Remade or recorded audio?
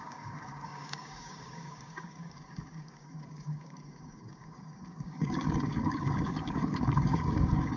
remade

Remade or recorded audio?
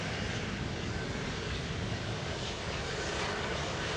remade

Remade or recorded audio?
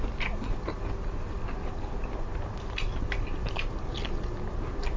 recorded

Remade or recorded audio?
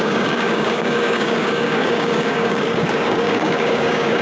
remade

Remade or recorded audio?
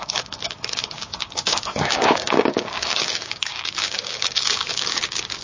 remade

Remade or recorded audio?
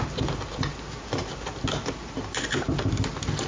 recorded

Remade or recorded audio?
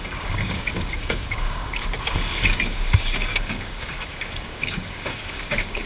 remade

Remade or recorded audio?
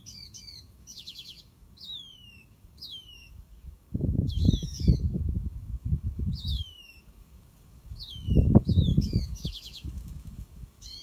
remade